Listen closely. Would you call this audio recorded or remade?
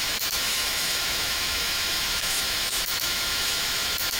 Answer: remade